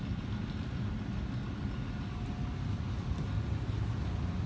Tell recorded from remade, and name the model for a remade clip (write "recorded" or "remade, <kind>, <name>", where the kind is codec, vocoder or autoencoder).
recorded